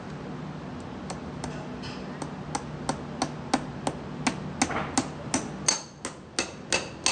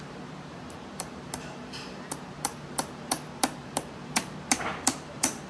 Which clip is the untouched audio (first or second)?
first